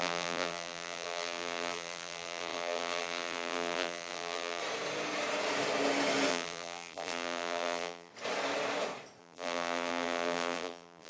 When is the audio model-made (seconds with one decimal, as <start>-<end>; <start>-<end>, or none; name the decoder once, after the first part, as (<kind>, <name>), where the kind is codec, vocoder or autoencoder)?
0.0-4.6 (vocoder, BigVGAN v2); 6.3-8.1; 9.2-11.1